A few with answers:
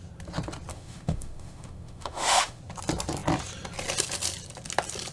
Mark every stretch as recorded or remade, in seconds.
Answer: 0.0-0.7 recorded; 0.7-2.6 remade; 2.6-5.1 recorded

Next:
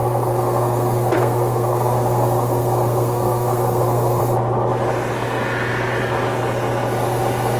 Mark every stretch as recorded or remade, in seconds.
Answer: 0.0-4.2 remade; 4.2-7.6 recorded

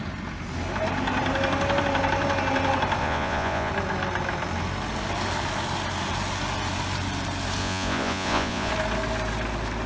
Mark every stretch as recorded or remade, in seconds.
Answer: 0.0-3.0 recorded; 3.0-3.7 remade; 3.7-7.6 recorded; 7.6-8.7 remade; 8.7-9.9 recorded

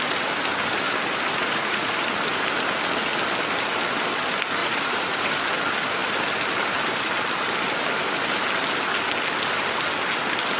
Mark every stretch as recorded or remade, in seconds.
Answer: 0.0-1.4 recorded; 1.4-2.0 remade; 2.0-4.6 recorded; 4.6-5.4 remade; 5.4-10.6 recorded